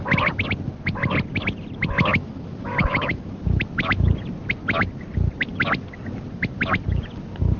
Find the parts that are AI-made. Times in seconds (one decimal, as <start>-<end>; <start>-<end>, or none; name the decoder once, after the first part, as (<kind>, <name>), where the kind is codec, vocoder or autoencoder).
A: 2.1-3.3 (autoencoder, DAC-VAE)